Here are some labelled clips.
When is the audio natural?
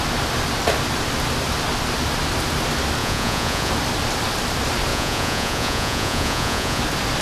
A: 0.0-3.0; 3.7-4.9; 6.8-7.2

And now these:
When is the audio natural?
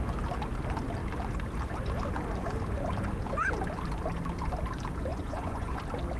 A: 0.0-5.1; 5.8-6.2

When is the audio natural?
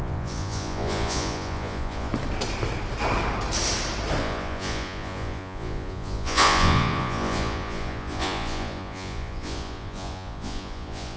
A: 2.1-4.2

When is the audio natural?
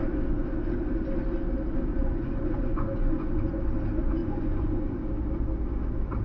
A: 0.0-1.9; 3.6-4.2; 5.0-6.2